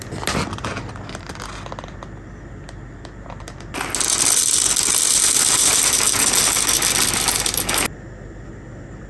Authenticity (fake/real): real